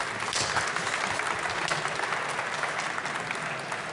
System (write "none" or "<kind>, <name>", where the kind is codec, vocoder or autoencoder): none